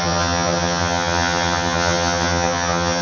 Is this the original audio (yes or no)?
no